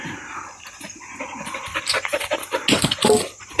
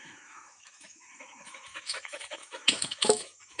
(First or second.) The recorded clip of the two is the first